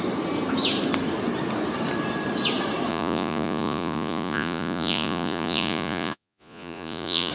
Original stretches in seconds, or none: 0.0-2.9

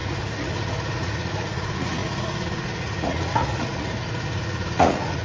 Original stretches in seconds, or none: none

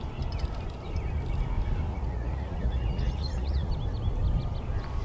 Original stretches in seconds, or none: 0.0-1.9; 3.7-5.0

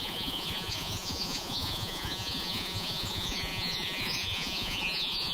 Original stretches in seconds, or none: none

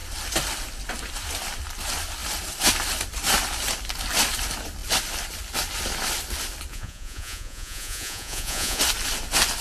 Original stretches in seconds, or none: 0.0-6.7; 8.8-9.6